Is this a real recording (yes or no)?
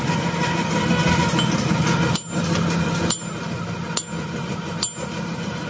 yes